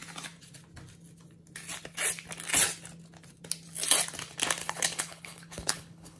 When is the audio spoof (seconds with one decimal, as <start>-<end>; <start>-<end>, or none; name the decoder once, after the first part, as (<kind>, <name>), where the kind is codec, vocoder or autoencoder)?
4.6-6.2 (codec, HILCodec)